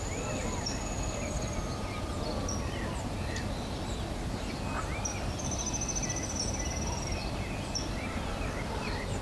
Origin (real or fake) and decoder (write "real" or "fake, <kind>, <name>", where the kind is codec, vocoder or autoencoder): real